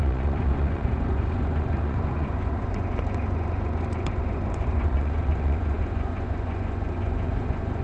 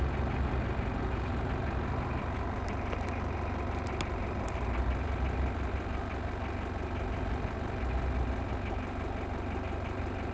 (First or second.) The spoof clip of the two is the first